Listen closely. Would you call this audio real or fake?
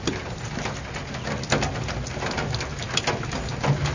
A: real